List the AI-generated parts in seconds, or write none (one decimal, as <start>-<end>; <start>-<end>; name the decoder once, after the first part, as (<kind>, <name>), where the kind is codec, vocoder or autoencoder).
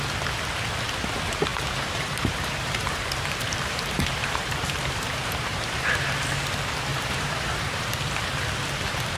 1.5-6.2 (vocoder, BigVGAN v2); 6.9-8.1